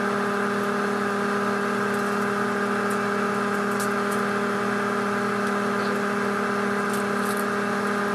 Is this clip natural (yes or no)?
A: yes